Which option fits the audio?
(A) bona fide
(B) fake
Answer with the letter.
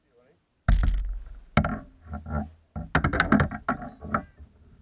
A